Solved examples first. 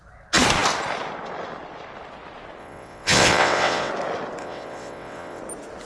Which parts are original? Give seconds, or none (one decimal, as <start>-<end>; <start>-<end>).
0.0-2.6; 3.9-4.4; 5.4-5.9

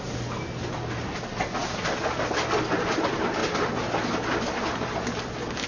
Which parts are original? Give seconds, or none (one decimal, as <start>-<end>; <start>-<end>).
0.0-5.7

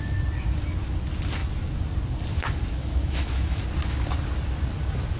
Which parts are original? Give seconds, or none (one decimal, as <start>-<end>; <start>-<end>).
0.0-2.8; 3.6-5.2